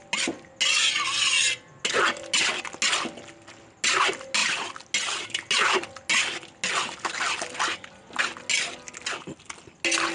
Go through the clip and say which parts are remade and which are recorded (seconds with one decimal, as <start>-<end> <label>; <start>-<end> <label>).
0.0-10.1 recorded